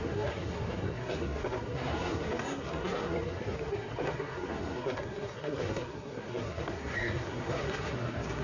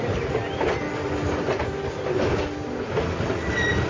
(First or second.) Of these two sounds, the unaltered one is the second